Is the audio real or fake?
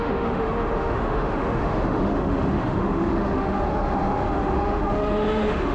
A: fake